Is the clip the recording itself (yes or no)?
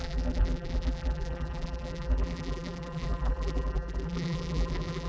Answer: no